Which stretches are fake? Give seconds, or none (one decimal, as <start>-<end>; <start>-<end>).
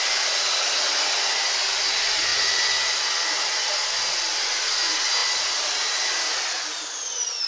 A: none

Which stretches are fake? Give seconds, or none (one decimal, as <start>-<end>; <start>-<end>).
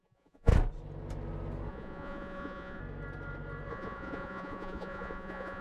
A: 0.0-0.5; 1.7-2.8; 3.7-5.6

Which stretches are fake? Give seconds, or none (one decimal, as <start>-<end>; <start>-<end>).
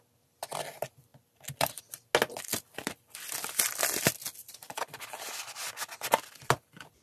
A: 1.1-1.8; 2.5-3.6; 4.4-5.4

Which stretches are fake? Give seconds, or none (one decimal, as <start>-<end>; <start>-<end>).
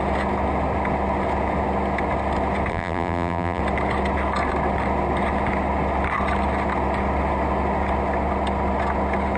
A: 2.7-3.6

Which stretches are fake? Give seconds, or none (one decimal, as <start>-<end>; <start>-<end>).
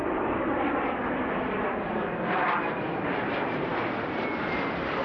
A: none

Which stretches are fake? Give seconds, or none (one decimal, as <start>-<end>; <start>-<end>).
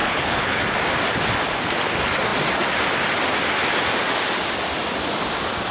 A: 0.0-0.6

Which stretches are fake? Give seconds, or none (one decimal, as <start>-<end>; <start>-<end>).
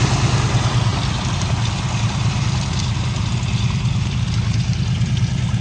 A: none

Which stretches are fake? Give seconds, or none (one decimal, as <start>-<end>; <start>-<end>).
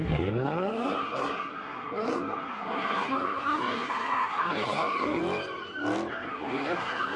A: 0.0-5.2; 6.1-7.2